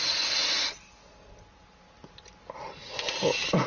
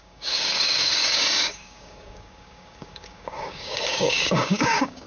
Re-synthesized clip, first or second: second